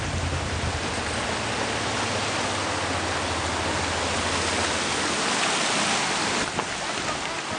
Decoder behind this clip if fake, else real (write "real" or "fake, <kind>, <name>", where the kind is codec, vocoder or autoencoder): real